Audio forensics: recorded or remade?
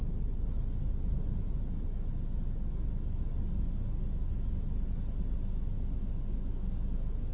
recorded